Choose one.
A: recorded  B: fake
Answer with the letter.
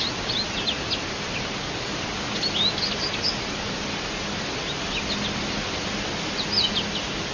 A